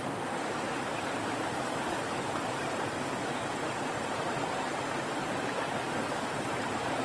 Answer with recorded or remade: remade